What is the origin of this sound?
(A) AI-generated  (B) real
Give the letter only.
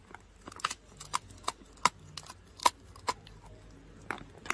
B